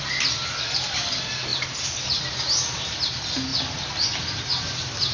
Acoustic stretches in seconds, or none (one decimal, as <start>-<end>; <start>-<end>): 0.0-1.5; 2.2-5.1